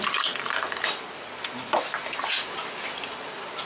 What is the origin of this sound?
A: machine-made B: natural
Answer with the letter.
A